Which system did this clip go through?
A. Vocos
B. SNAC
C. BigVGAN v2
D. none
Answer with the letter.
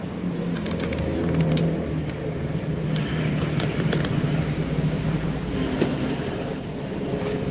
C